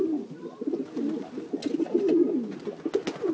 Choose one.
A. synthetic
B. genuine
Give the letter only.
B